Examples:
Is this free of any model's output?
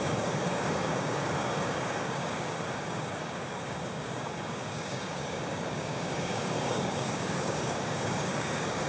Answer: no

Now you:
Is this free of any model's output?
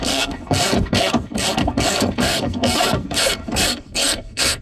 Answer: no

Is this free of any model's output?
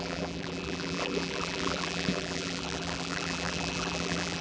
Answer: no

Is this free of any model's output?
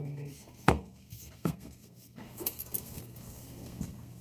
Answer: no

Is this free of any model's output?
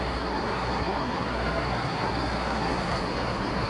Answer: no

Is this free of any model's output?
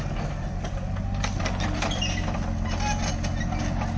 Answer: yes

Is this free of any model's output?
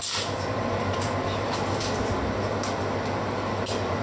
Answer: yes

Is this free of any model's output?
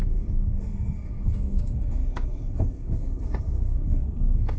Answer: no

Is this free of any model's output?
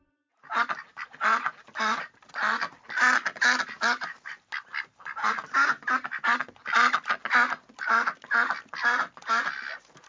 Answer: yes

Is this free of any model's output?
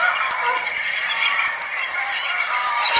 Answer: yes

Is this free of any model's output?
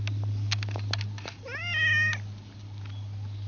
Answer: yes